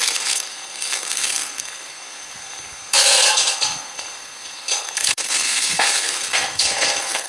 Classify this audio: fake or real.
fake